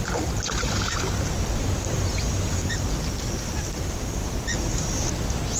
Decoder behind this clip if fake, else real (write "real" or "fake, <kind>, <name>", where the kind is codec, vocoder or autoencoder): real